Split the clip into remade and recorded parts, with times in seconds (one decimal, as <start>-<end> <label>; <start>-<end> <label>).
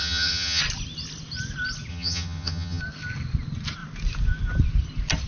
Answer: 0.0-0.6 remade; 0.6-1.9 recorded; 1.9-2.8 remade; 2.8-5.3 recorded